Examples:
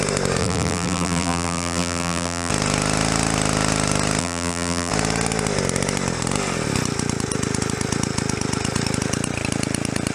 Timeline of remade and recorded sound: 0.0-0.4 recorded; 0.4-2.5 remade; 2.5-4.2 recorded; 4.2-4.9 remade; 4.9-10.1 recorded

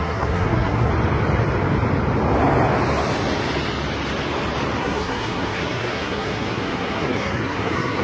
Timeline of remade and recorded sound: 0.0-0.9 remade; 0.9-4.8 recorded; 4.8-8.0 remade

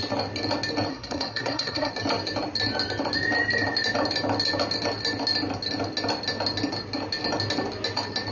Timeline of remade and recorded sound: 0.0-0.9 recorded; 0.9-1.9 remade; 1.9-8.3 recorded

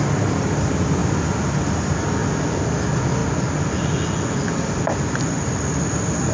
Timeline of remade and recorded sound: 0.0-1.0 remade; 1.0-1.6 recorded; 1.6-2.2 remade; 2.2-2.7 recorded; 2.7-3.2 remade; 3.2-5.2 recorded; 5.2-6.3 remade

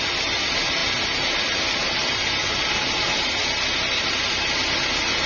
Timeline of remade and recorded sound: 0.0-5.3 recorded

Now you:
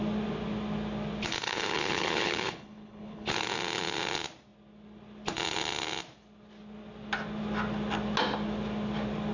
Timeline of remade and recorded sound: 0.0-1.5 recorded; 1.5-3.3 remade; 3.3-9.3 recorded

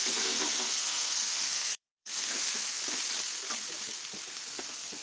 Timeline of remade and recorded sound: 0.0-2.8 remade; 2.8-4.3 recorded; 4.3-5.0 remade